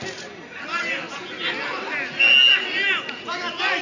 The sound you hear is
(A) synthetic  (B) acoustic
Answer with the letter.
B